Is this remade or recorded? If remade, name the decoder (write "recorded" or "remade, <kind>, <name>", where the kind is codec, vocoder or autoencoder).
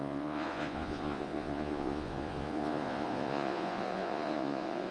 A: remade, vocoder, Vocos